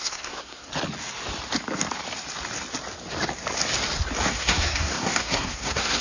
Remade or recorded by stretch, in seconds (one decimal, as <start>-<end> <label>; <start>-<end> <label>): 0.0-0.7 remade; 0.7-4.3 recorded; 4.3-6.0 remade